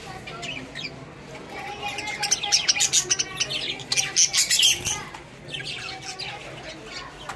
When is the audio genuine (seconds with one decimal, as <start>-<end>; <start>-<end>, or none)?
0.0-7.4